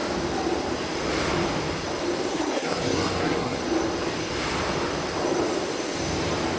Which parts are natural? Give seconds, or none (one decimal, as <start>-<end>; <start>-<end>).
0.0-2.3; 3.6-6.6